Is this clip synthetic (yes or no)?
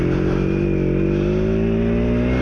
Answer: no